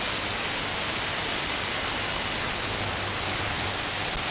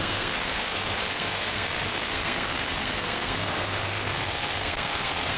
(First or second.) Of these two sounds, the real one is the first